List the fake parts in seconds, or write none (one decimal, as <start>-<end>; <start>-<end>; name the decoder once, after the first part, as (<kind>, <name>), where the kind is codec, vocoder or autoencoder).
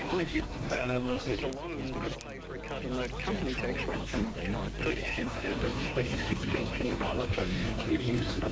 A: 0.0-1.4 (codec, SNAC); 3.9-4.4; 4.9-8.5